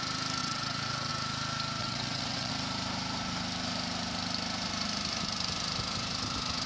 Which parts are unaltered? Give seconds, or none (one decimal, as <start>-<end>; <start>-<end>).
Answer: 0.0-0.4; 1.1-1.8; 2.5-6.7